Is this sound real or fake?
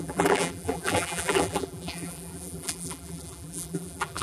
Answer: fake